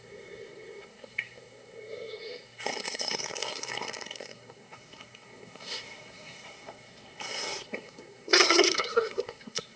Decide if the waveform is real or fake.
fake